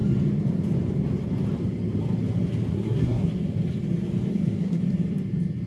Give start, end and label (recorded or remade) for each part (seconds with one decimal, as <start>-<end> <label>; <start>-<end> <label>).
0.0-2.7 recorded; 2.7-3.3 remade; 3.3-4.3 recorded; 4.3-4.8 remade; 4.8-5.7 recorded